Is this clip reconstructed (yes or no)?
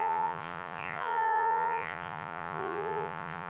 yes